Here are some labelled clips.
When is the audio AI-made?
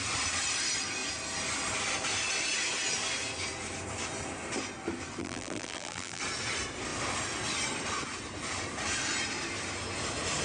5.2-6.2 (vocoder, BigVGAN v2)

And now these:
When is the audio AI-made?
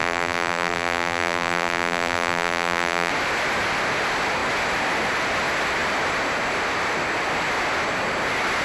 0.0-3.1 (vocoder, BigVGAN v2)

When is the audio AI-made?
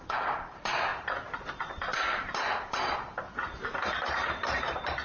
0.0-0.9 (vocoder, BigVGAN v2); 1.8-5.0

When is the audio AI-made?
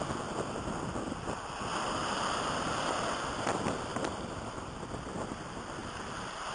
2.0-2.7 (vocoder, BigVGAN v2); 3.9-4.7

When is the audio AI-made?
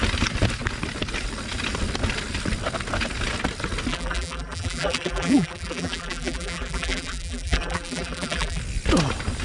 3.9-8.6 (vocoder, BigVGAN v2)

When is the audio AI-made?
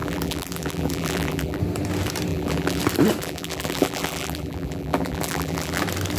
0.0-1.6 (vocoder, BigVGAN v2); 2.3-2.8; 3.2-5.8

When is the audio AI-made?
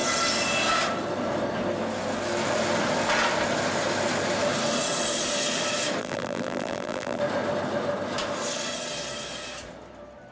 6.0-7.2 (vocoder, BigVGAN v2)